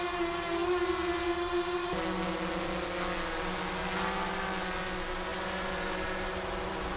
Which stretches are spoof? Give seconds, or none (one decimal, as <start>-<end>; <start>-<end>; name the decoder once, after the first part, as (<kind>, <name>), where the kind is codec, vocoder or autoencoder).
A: 5.3-7.0 (vocoder, BigVGAN v2)